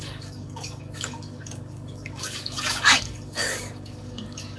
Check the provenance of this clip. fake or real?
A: fake